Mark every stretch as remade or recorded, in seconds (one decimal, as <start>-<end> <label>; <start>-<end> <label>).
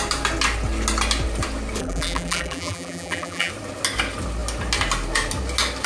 0.0-1.8 recorded; 1.8-3.5 remade; 3.5-5.9 recorded